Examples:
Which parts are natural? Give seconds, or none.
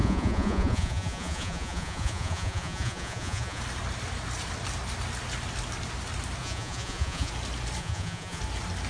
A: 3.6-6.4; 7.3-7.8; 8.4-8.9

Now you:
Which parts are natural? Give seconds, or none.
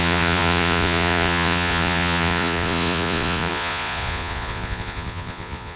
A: none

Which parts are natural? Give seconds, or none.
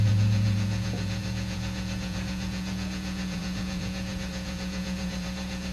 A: none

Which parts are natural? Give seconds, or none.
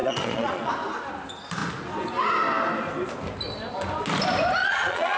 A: 0.7-4.6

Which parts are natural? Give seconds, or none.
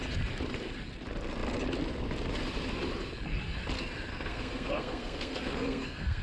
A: 0.0-4.1